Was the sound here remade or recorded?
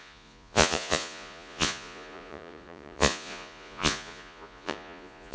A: remade